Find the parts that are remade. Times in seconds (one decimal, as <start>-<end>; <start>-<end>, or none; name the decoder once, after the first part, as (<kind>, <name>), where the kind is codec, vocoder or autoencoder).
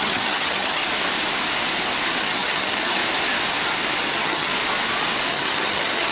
0.0-0.8 (vocoder, HiFi-GAN); 2.2-3.0; 4.1-4.5; 5.3-6.1